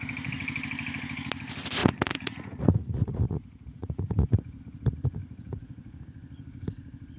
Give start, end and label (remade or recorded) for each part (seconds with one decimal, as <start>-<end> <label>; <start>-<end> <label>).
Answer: 0.0-1.8 recorded; 1.8-4.6 remade; 4.6-5.2 recorded; 5.2-6.0 remade; 6.0-7.2 recorded

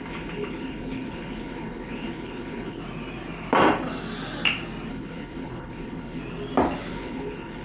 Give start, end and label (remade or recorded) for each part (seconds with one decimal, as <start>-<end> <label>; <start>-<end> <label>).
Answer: 0.0-2.8 remade; 2.8-4.9 recorded; 4.9-6.2 remade; 6.2-6.9 recorded; 6.9-7.6 remade

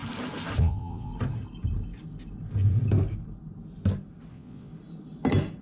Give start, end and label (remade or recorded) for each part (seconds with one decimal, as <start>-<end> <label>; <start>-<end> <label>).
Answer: 0.0-0.6 recorded; 0.6-1.1 remade; 1.1-4.3 recorded; 4.3-4.7 remade; 4.7-5.6 recorded

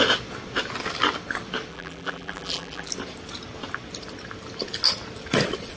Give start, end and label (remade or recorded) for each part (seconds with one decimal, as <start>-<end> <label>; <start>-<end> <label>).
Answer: 0.0-1.7 recorded; 1.7-2.9 remade; 2.9-5.8 recorded

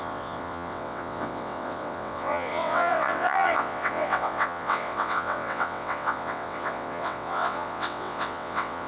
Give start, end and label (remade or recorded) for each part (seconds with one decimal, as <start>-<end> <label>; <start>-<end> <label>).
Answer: 0.0-8.9 remade

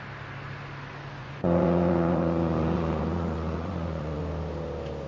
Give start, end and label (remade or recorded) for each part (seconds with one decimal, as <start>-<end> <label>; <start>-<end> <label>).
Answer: 0.0-1.2 recorded; 1.2-4.2 remade; 4.2-5.1 recorded

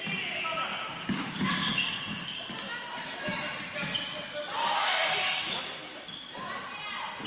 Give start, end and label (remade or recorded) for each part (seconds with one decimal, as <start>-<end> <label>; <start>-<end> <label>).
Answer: 0.0-0.7 recorded; 0.7-2.4 remade; 2.4-4.6 recorded; 4.6-5.6 remade; 5.6-7.3 recorded